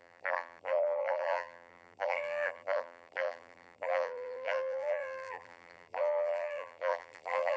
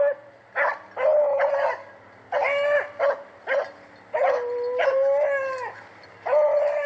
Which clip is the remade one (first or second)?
first